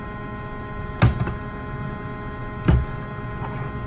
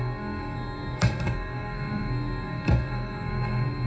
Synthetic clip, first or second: second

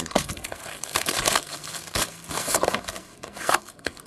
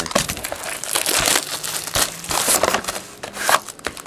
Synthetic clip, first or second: first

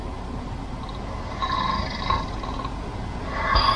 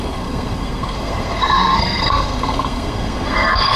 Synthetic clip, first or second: second